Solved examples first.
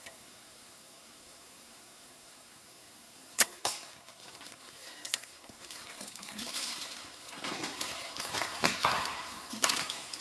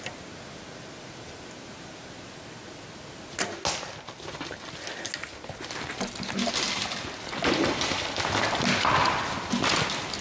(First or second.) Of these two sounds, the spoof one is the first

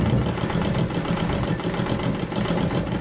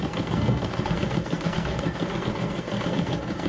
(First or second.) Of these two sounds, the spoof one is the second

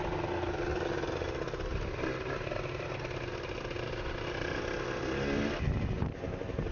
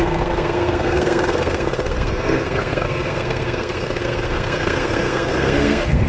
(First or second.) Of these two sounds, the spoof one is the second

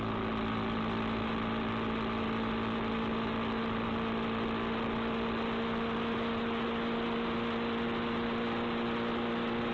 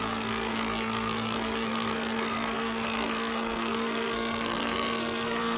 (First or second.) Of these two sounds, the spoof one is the second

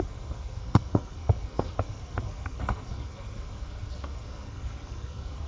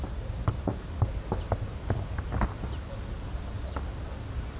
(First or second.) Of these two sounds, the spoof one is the first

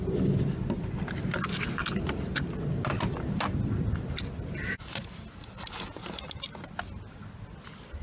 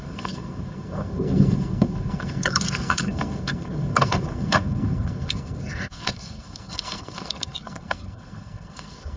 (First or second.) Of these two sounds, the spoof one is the second